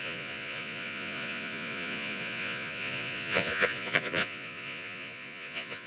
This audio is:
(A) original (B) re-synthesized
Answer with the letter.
B